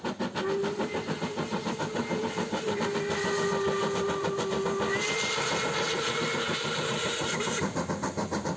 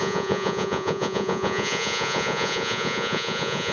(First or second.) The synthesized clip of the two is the second